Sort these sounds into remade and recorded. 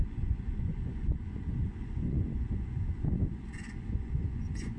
remade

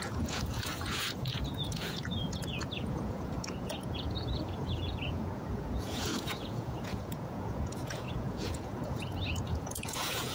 remade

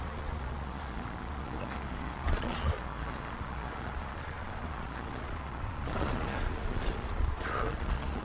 remade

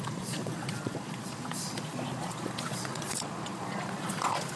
remade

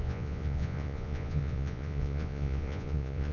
remade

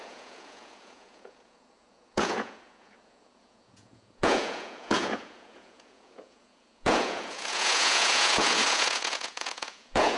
remade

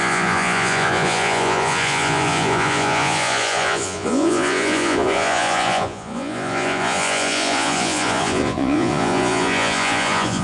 remade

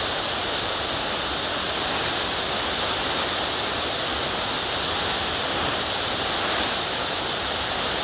recorded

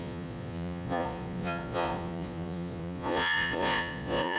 remade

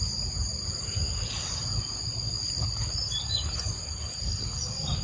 recorded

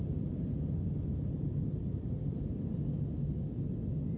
recorded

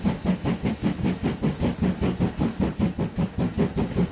recorded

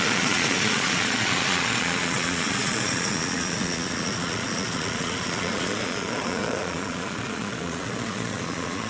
remade